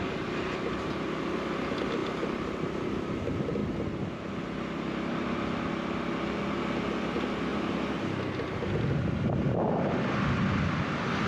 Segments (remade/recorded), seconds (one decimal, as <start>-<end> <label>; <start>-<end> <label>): 0.0-2.0 recorded; 2.0-3.1 remade; 3.1-3.6 recorded; 3.6-5.7 remade; 5.7-11.3 recorded